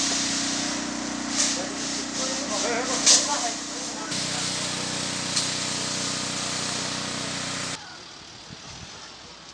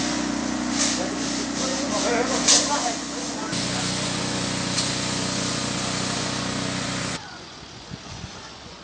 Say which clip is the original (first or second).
first